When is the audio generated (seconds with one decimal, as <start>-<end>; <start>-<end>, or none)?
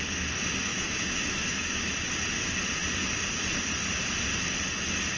0.7-1.9